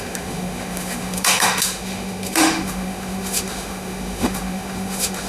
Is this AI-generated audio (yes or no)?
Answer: yes